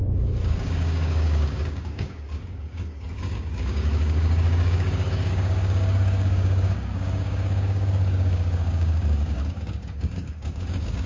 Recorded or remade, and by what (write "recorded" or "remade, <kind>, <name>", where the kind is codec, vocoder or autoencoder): remade, codec, DAC